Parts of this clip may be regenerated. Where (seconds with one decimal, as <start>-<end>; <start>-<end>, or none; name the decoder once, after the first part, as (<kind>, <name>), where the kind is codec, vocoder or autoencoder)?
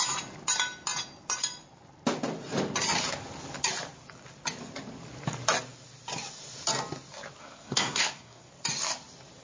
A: 7.4-8.5 (codec, SNAC)